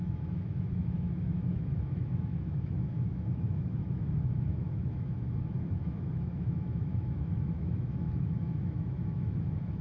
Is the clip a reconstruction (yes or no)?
yes